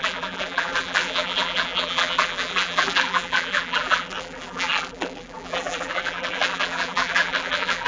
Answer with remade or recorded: remade